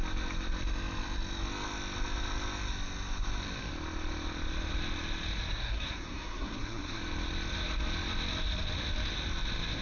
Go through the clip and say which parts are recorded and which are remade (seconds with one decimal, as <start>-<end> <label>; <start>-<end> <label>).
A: 0.0-5.5 recorded; 5.5-7.0 remade; 7.0-9.8 recorded